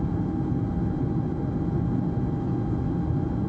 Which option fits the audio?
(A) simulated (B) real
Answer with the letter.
B